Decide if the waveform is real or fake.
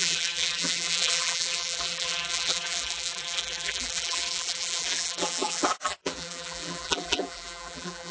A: fake